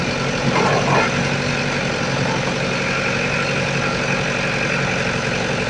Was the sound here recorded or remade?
recorded